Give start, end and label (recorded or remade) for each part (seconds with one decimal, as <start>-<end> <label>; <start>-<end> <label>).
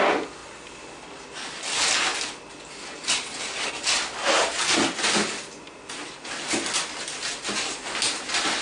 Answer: 0.0-8.6 recorded